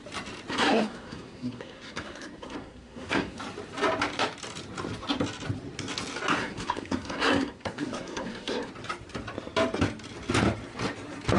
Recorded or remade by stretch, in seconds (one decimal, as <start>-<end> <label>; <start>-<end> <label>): 0.0-0.5 recorded; 0.5-3.4 remade; 3.4-6.4 recorded; 6.4-8.7 remade; 8.7-11.4 recorded